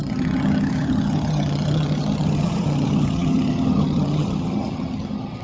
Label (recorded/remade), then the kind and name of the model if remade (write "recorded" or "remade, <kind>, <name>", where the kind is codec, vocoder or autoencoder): remade, vocoder, HiFi-GAN